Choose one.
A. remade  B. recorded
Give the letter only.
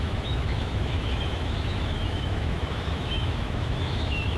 A